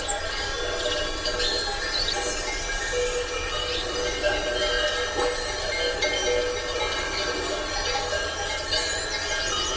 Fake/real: real